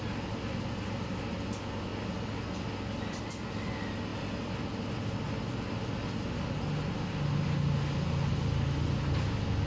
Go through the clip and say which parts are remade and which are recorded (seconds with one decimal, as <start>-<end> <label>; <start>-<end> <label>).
0.0-9.7 recorded